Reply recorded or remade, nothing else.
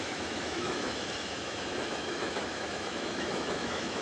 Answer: remade